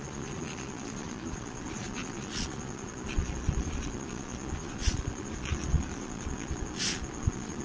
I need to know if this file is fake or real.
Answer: fake